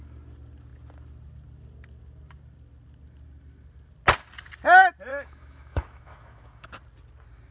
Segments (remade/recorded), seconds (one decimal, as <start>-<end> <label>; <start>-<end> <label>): 0.0-5.1 recorded; 5.1-6.7 remade; 6.7-7.5 recorded

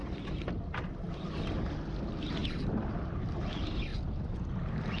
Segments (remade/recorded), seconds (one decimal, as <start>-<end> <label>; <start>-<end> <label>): 0.0-5.0 recorded

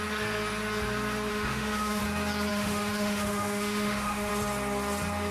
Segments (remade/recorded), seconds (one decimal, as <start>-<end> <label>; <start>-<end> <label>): 0.0-1.3 recorded; 1.3-2.0 remade; 2.0-2.5 recorded; 2.5-4.3 remade; 4.3-5.3 recorded

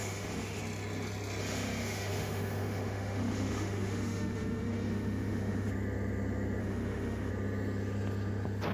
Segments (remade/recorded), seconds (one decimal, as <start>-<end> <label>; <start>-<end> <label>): 0.0-0.6 remade; 0.6-1.4 recorded; 1.4-5.7 remade; 5.7-6.6 recorded; 6.6-7.3 remade; 7.3-8.7 recorded

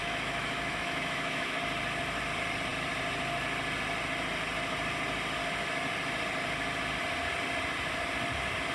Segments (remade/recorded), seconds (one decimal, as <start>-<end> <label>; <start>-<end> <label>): 0.0-1.6 remade; 1.6-8.7 recorded